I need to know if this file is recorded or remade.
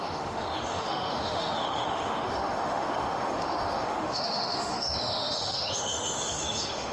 remade